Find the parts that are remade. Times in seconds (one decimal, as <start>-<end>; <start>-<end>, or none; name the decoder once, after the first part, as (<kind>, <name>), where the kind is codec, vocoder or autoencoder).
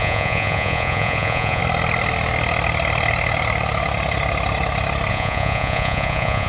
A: 0.0-1.6 (vocoder, Vocos); 5.1-6.5